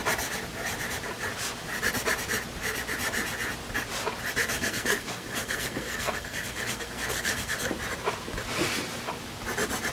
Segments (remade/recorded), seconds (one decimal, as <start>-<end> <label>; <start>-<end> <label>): 0.0-4.4 recorded; 4.4-7.7 remade; 7.7-9.9 recorded